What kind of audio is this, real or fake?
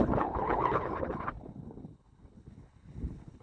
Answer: fake